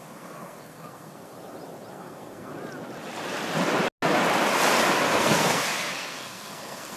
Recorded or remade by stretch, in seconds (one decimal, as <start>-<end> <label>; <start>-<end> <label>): 0.0-1.3 remade; 1.3-1.9 recorded; 1.9-2.5 remade; 2.5-5.1 recorded; 5.1-7.0 remade